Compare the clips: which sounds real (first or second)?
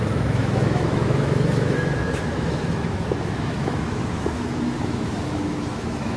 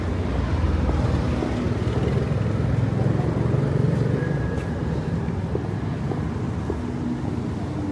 second